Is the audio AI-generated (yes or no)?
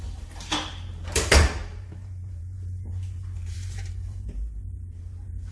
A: yes